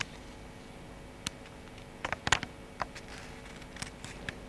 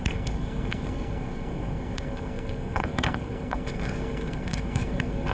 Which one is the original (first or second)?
first